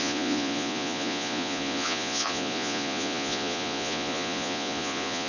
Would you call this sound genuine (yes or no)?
no